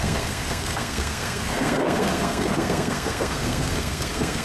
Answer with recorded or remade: remade